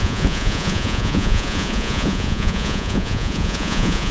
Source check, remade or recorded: remade